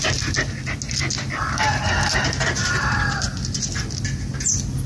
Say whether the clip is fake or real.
real